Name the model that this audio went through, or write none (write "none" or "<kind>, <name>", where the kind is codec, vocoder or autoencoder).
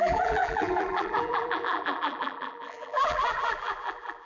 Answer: vocoder, BigVGAN v2